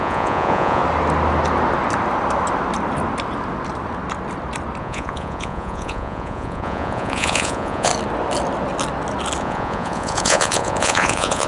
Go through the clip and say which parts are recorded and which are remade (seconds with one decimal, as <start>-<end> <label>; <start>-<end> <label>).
0.0-0.8 remade; 0.8-4.8 recorded; 4.8-7.9 remade; 7.9-9.4 recorded; 9.4-11.5 remade